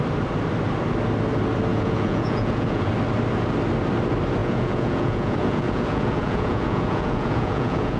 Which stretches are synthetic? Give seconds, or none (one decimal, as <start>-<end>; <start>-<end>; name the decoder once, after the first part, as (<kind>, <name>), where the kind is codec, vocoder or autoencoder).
1.7-2.9 (vocoder, Vocos); 4.4-8.0